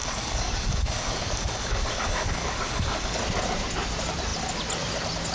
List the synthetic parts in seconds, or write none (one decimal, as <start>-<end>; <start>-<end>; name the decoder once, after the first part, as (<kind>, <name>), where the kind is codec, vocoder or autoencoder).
0.0-3.2 (codec, DAC)